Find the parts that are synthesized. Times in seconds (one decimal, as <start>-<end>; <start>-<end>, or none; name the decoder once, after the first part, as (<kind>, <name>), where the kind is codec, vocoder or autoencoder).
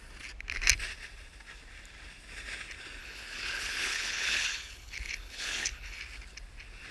3.0-6.0 (codec, HILCodec)